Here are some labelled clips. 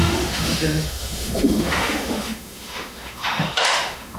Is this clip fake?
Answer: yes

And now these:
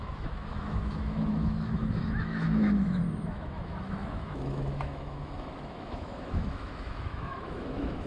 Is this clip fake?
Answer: yes